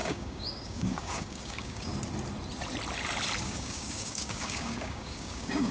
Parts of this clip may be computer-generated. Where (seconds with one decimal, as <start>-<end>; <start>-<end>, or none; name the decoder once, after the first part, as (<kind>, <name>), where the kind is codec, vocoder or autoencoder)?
0.0-1.9 (codec, DAC); 3.4-5.7